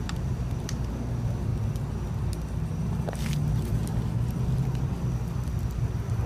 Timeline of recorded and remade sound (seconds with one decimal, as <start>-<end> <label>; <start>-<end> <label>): 0.0-1.5 remade; 1.5-2.8 recorded; 2.8-3.8 remade; 3.8-4.8 recorded; 4.8-6.3 remade